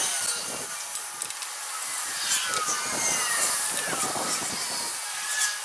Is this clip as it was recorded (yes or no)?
yes